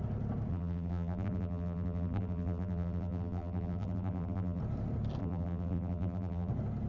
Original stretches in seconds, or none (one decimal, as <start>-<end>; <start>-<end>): 0.0-0.5; 4.6-5.2; 6.5-6.9

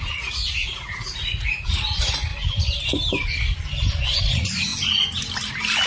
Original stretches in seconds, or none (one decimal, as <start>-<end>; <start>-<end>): 2.3-4.2; 4.7-5.9

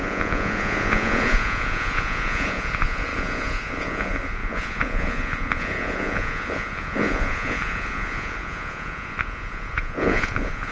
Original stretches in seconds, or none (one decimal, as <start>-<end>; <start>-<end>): none